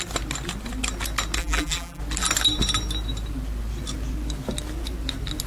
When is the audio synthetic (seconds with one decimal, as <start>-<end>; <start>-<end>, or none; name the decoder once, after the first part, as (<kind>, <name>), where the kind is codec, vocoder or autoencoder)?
1.4-2.0 (vocoder, BigVGAN v2)